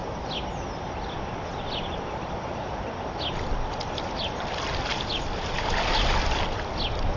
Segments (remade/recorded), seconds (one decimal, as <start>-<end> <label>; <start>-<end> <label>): 0.0-7.2 recorded

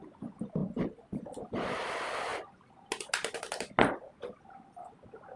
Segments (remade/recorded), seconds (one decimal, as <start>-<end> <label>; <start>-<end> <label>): 0.0-0.6 recorded; 0.6-1.2 remade; 1.2-5.4 recorded